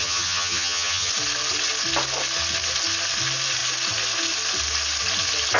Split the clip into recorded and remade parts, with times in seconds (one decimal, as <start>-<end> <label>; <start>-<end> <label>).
0.0-1.1 remade; 1.1-5.6 recorded

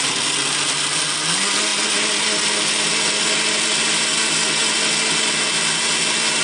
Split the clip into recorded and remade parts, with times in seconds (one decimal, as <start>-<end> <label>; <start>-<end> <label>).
0.0-6.4 recorded